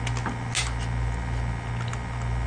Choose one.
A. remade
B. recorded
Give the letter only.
B